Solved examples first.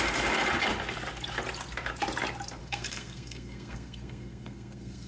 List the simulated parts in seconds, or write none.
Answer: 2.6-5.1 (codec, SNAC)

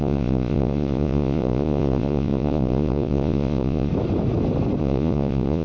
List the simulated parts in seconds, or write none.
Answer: 0.0-3.9 (vocoder, Vocos); 4.8-5.6

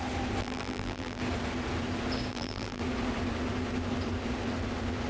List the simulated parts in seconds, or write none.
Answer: 0.4-1.2 (vocoder, BigVGAN v2); 2.3-2.8

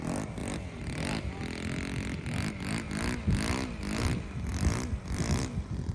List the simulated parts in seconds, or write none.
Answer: 0.4-1.4 (vocoder, BigVGAN v2); 4.5-5.4